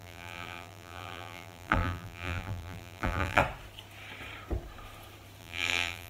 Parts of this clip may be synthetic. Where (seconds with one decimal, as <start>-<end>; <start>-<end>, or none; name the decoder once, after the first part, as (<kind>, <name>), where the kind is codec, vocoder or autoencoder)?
0.0-3.4 (vocoder, BigVGAN v2); 5.4-6.1